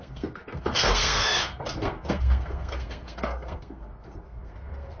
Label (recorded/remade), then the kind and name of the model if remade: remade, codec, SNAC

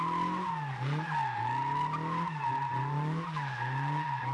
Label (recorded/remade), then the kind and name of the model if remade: recorded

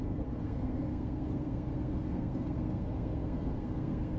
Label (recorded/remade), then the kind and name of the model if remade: remade, codec, SNAC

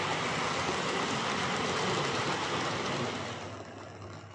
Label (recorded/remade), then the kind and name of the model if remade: recorded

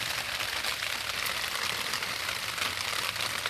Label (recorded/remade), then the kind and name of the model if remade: recorded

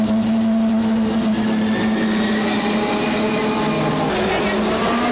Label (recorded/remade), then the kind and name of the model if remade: recorded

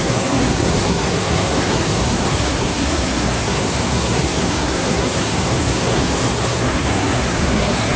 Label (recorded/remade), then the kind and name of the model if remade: remade, codec, SNAC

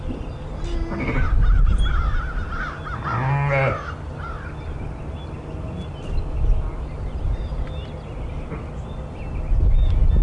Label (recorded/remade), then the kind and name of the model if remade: recorded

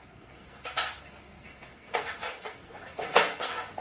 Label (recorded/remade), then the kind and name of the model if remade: remade, codec, SNAC